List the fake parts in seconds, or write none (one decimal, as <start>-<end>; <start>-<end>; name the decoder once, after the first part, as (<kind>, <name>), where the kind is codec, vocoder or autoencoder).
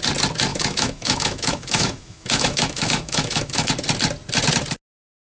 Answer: 0.5-3.7 (autoencoder, DAC-VAE)